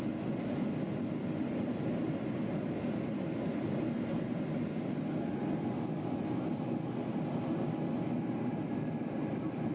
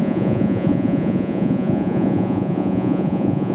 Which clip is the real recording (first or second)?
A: first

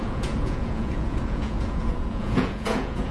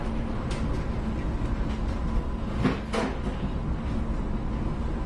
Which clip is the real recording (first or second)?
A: second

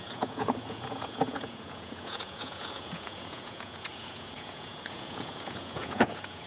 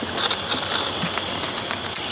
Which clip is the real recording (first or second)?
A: second